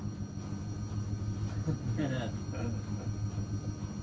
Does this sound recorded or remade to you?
recorded